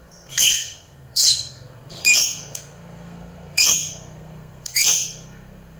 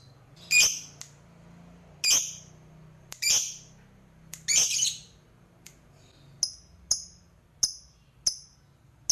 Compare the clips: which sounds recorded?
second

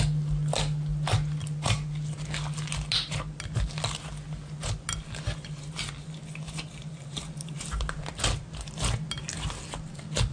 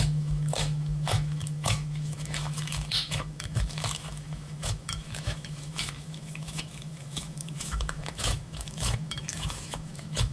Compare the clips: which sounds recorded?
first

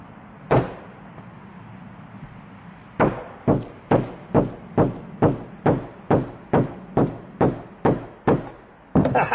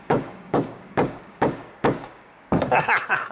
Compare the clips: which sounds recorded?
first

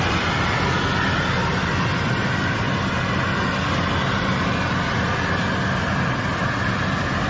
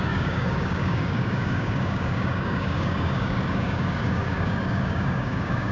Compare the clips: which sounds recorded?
first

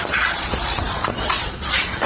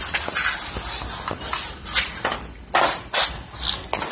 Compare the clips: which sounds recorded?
second